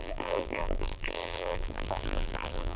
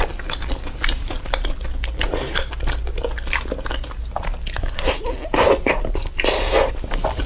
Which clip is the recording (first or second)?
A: second